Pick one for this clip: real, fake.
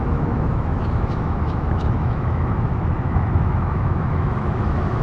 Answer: fake